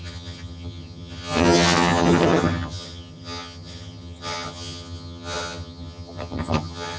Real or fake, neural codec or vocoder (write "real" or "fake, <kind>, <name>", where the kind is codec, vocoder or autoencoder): fake, vocoder, HiFi-GAN